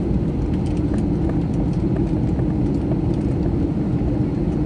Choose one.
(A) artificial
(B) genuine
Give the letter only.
B